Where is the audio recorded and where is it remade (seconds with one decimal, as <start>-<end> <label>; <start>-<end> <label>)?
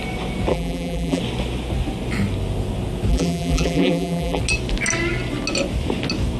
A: 0.0-0.5 recorded; 0.5-1.2 remade; 1.2-3.1 recorded; 3.1-4.4 remade; 4.4-6.4 recorded